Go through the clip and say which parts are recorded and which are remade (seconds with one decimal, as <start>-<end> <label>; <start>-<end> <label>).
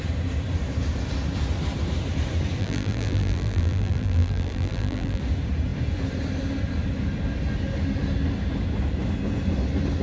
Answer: 0.0-2.6 recorded; 2.6-5.2 remade; 5.2-10.0 recorded